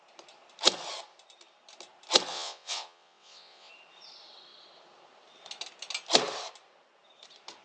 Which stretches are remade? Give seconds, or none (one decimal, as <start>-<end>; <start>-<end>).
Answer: 2.3-3.7